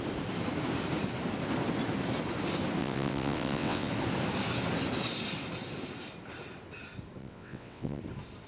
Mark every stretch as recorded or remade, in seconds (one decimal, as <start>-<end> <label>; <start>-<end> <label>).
0.0-2.8 recorded; 2.8-3.9 remade; 3.9-7.2 recorded; 7.2-8.0 remade; 8.0-8.5 recorded